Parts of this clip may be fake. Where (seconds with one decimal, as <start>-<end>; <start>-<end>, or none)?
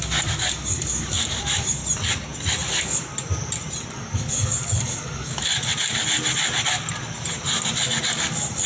0.0-1.8; 2.7-3.1; 3.9-5.5; 8.1-8.7